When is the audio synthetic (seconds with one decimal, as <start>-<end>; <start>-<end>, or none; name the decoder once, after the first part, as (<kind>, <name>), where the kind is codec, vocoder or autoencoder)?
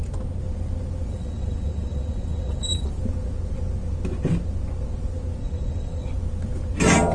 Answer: 1.1-2.9 (vocoder, WaveNeXt); 5.4-6.1